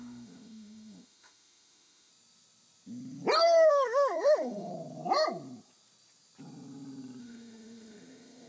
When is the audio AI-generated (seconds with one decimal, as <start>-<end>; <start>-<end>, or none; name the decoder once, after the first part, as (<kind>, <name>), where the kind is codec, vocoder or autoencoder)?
0.0-2.1 (autoencoder, DAC-VAE); 3.7-4.7; 7.2-8.5